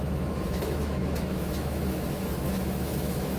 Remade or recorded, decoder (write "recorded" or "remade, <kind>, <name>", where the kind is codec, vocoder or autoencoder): remade, autoencoder, DAC-VAE